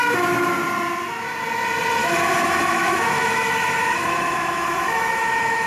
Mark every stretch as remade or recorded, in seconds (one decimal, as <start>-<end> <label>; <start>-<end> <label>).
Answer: 0.0-2.0 recorded; 2.0-5.7 remade